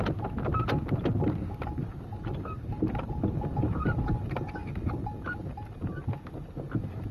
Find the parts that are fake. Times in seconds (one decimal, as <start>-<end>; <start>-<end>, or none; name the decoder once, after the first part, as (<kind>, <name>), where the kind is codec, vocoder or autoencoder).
2.1-3.4 (vocoder, BigVGAN v2)